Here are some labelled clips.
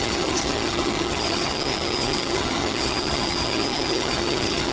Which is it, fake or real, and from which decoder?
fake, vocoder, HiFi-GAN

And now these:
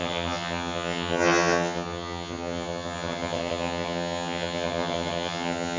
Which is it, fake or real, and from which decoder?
fake, vocoder, HiFi-GAN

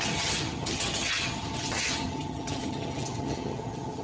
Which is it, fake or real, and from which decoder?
fake, vocoder, HiFi-GAN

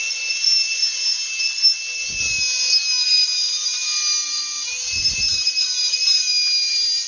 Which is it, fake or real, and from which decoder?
real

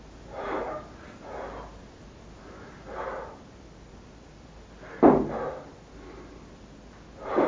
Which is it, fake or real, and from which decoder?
real